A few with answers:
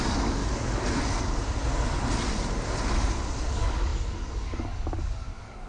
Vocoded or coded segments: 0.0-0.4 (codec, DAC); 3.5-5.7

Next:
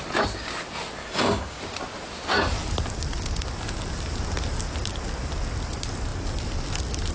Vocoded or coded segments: 1.0-1.6 (codec, DAC)

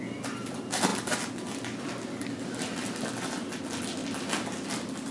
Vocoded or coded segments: none

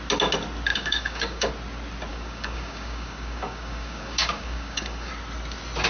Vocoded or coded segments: 0.7-1.5 (codec, DAC); 2.1-5.1